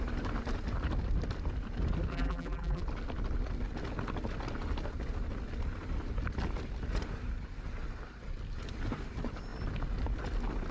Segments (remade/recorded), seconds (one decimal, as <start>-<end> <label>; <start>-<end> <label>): 0.0-2.1 recorded; 2.1-2.8 remade; 2.8-10.7 recorded